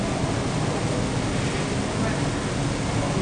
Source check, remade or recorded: recorded